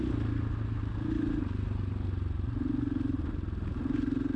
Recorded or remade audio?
recorded